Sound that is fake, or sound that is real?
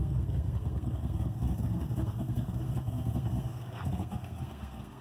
fake